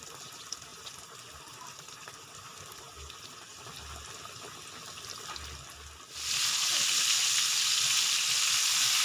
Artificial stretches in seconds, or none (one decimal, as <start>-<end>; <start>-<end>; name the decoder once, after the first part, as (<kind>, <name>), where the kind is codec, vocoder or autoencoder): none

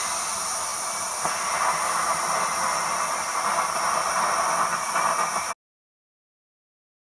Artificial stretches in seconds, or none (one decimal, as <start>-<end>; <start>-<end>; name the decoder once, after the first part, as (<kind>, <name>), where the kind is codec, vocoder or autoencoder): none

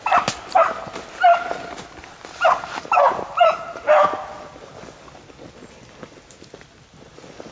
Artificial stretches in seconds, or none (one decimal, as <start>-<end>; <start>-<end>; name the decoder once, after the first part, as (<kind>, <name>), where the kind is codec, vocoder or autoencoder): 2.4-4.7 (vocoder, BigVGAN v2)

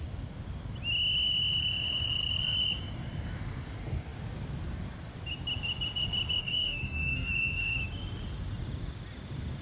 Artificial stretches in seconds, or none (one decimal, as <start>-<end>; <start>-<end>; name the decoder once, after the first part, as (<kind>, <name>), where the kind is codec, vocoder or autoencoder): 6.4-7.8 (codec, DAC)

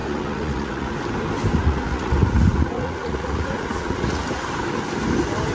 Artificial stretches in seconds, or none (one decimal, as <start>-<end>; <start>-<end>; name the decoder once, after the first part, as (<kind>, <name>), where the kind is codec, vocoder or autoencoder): 0.0-0.9 (vocoder, Vocos); 1.6-4.2

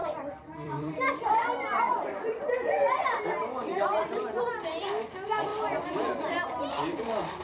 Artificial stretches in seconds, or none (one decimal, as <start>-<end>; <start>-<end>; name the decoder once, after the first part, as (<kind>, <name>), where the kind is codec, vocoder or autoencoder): 0.0-3.2 (vocoder, BigVGAN v2)